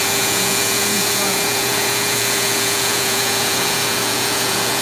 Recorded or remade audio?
remade